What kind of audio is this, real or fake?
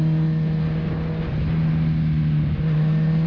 real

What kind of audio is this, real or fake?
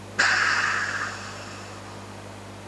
real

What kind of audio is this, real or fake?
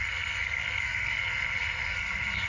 fake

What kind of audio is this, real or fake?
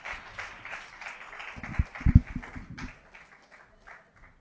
real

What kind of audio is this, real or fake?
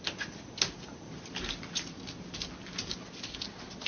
real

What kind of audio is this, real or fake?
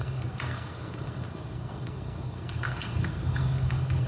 fake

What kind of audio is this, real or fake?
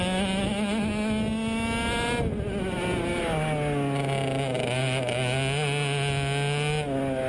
real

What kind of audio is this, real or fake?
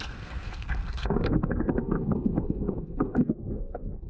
fake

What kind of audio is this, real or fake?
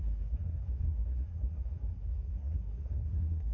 fake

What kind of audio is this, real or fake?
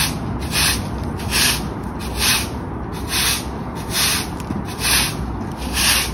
real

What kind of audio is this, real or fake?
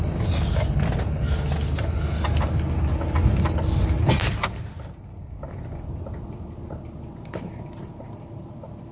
real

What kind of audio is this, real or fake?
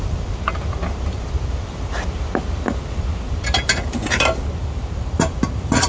real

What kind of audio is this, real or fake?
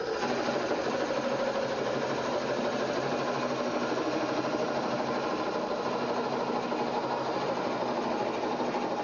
real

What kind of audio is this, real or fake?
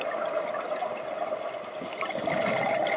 real